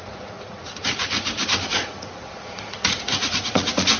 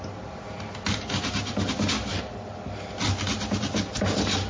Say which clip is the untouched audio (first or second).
second